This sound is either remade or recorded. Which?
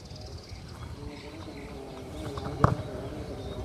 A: recorded